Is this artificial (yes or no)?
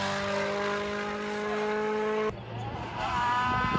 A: no